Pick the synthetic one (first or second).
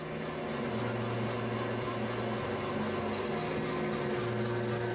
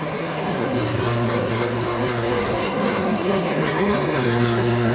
second